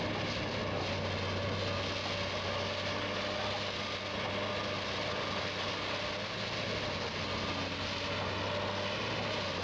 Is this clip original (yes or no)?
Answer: yes